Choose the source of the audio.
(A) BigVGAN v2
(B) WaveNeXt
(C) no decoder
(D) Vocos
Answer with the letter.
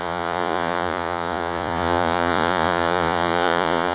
D